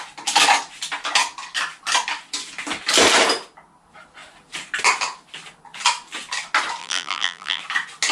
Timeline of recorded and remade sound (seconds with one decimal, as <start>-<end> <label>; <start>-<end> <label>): 0.0-6.8 recorded; 6.8-7.6 remade; 7.6-8.1 recorded